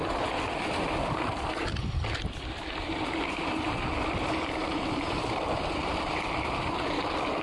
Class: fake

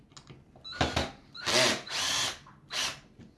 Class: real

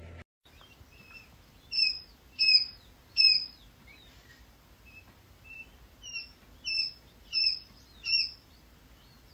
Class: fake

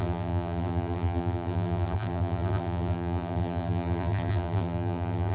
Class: fake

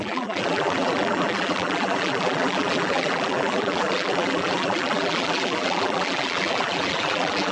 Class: fake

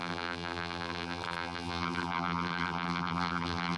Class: fake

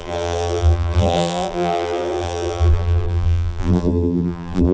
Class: fake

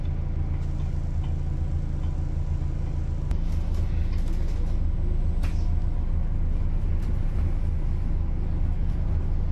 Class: real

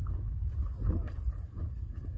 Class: real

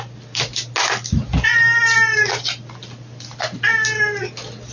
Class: real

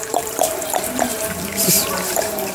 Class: fake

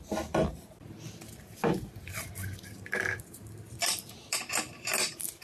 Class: fake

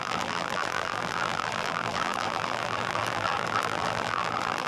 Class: fake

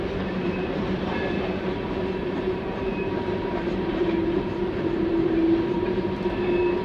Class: fake